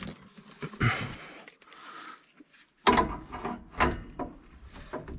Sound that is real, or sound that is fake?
real